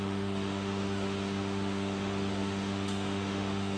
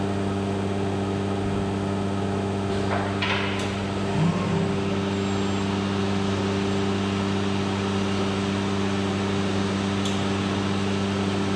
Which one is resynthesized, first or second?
first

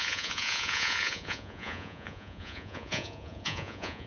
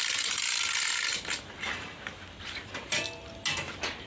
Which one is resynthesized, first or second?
first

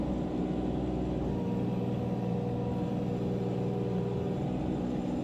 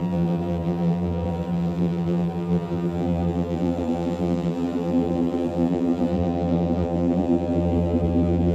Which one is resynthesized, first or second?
second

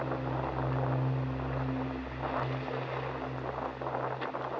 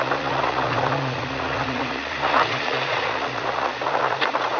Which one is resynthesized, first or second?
second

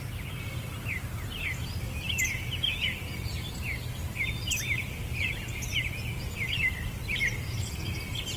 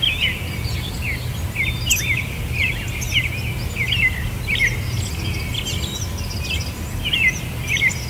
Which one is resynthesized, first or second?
first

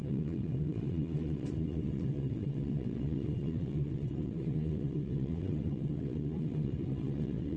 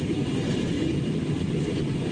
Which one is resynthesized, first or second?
first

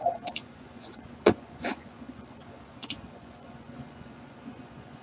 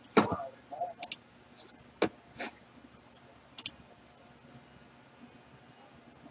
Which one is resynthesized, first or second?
first